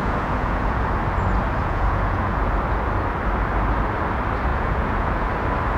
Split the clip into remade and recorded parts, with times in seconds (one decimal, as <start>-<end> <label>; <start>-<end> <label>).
0.0-0.8 remade; 0.8-1.6 recorded; 1.6-2.5 remade; 2.5-4.5 recorded; 4.5-5.3 remade; 5.3-5.8 recorded